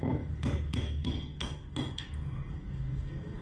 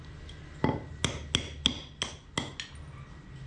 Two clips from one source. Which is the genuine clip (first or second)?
second